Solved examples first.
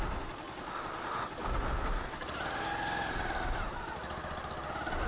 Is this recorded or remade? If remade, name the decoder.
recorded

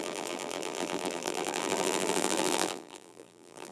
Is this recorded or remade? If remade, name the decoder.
remade, vocoder, BigVGAN v2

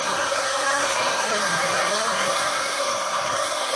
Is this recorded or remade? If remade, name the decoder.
remade, codec, SNAC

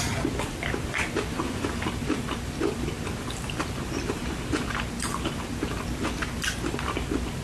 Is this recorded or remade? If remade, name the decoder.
remade, vocoder, BigVGAN v2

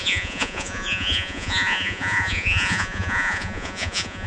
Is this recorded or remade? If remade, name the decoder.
remade, vocoder, Vocos